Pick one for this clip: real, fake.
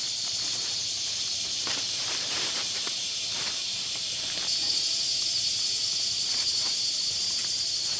fake